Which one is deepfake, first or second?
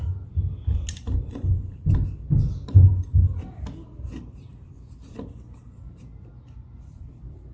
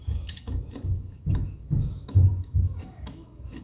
second